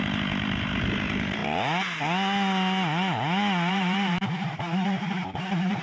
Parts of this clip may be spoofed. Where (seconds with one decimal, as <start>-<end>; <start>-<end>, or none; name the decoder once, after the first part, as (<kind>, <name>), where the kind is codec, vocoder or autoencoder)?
0.0-1.4 (vocoder, BigVGAN v2); 3.7-5.8